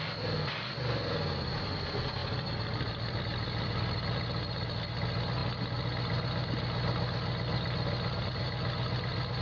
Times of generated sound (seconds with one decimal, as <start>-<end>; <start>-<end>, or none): none